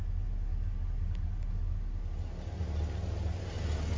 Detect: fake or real real